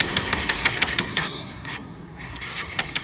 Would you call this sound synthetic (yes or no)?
yes